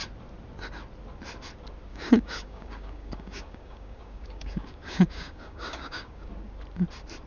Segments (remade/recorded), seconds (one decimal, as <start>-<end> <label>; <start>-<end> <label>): 0.0-1.9 recorded; 1.9-6.3 remade; 6.3-7.3 recorded